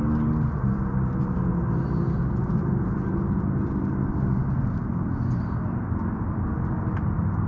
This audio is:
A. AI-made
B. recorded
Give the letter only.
B